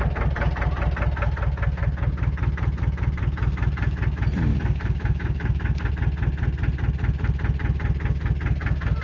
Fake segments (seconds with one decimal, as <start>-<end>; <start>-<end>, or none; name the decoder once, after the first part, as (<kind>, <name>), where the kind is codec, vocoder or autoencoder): 4.5-5.9 (codec, DAC)

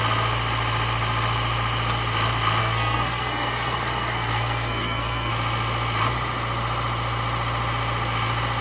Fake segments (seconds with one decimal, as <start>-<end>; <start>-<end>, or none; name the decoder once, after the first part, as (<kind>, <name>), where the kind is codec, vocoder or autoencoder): 2.6-5.3 (codec, SNAC)